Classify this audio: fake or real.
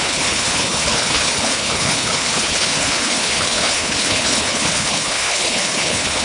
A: fake